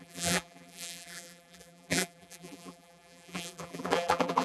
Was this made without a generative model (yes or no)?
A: no